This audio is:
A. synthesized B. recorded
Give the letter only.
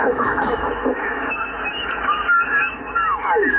A